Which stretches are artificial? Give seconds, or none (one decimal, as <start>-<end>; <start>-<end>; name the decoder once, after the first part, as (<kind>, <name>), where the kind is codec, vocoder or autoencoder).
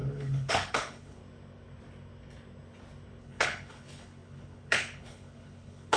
0.0-1.2 (codec, HILCodec); 3.2-6.0